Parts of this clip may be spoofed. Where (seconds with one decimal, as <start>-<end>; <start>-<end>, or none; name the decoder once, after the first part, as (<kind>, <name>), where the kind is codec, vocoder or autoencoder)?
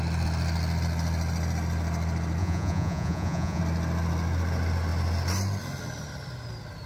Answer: 2.4-3.6 (vocoder, Vocos)